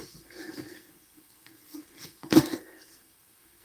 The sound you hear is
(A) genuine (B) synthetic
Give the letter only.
B